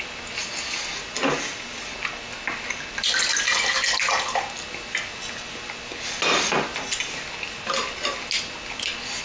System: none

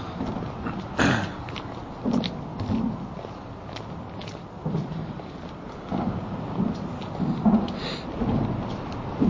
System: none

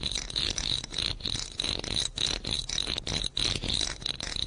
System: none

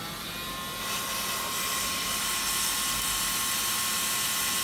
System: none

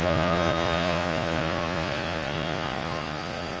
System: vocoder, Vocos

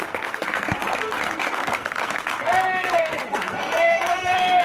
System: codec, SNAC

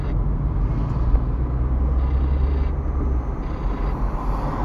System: none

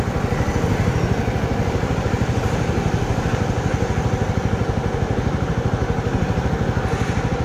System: none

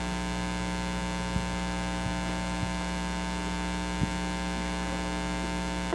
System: none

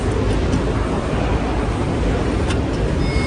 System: none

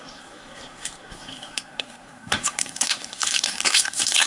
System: codec, SNAC